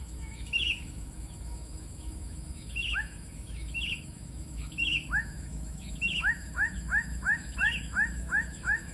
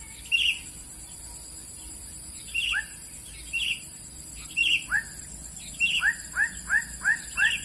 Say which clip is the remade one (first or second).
first